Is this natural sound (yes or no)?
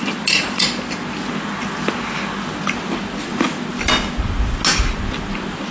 yes